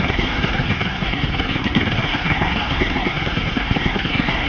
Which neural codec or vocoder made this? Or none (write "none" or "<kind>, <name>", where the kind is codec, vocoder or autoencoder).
codec, SNAC